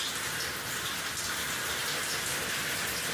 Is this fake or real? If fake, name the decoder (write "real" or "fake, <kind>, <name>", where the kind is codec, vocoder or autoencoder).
real